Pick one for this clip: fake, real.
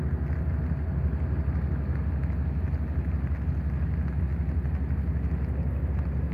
real